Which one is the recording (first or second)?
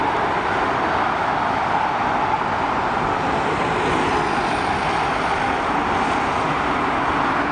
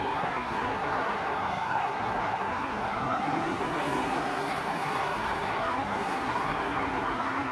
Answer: first